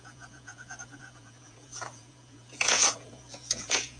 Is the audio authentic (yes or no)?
no